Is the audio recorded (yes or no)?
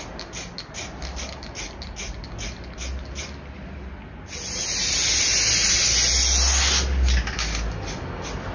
yes